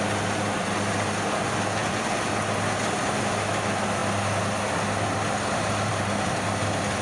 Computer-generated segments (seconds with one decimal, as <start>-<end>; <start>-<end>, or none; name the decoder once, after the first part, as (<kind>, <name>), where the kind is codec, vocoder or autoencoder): 1.8-2.3 (vocoder, BigVGAN v2)